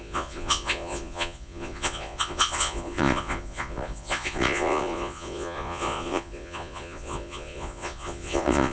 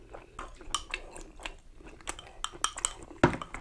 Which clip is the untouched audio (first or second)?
second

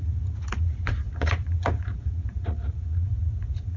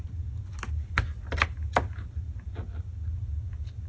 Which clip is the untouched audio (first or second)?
second